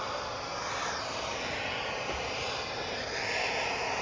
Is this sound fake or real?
real